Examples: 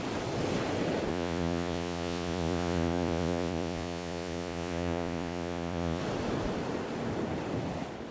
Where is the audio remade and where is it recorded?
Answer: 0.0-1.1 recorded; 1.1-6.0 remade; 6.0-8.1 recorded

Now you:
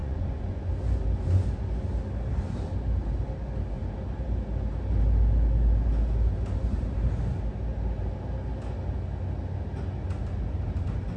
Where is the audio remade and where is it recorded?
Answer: 0.0-0.7 remade; 0.7-11.2 recorded

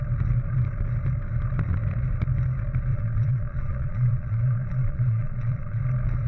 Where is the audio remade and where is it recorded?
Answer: 0.0-2.9 recorded; 2.9-5.8 remade; 5.8-6.3 recorded